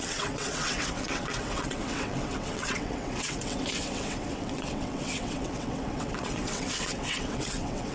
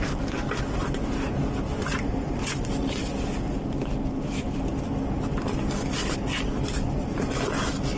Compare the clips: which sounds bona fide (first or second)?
second